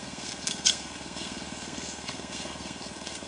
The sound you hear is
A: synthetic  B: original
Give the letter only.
A